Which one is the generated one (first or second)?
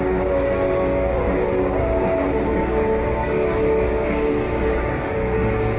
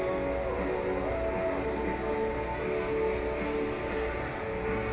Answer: first